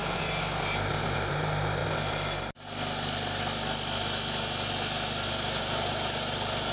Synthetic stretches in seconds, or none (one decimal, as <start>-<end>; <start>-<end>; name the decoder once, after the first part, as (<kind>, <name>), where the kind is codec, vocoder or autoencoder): 1.3-1.8 (vocoder, BigVGAN v2); 5.6-6.7